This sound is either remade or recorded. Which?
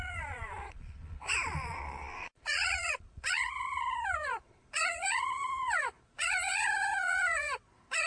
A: remade